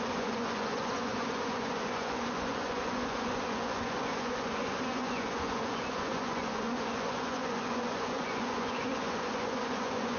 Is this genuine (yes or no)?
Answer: no